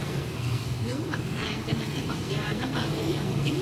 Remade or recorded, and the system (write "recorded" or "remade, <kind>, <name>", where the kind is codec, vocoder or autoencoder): remade, codec, SNAC